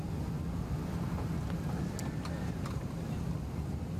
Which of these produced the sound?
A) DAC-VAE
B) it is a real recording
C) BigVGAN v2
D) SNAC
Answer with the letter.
B